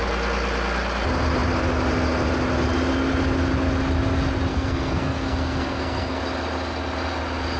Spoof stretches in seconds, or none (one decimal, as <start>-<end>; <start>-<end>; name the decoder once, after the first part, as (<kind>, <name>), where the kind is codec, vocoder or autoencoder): 4.5-6.2 (codec, SNAC)